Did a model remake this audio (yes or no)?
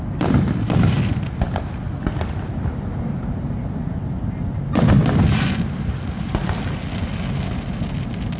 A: no